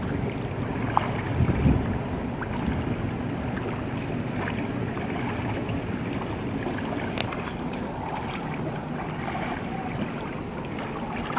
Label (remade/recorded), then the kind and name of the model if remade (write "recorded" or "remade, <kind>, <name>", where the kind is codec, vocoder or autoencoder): recorded